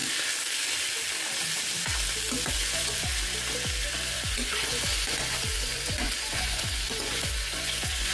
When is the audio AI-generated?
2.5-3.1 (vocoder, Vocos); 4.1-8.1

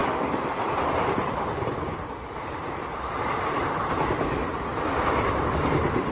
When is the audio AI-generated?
0.0-6.1 (vocoder, BigVGAN v2)

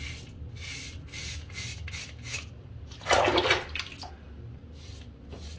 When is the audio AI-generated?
none

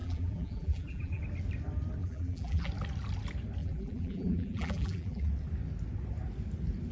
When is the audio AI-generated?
0.0-1.2 (vocoder, BigVGAN v2); 2.0-2.7; 3.6-5.3

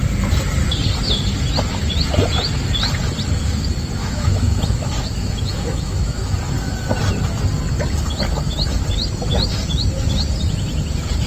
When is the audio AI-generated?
4.0-6.4 (autoencoder, DAC-VAE)